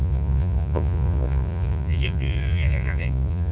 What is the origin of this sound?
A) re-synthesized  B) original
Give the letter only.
A